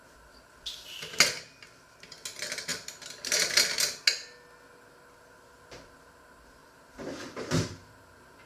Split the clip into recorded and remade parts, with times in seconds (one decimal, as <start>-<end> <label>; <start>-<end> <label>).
0.0-6.6 recorded; 6.6-8.1 remade; 8.1-8.5 recorded